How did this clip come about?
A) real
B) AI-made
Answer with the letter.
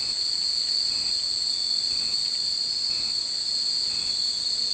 A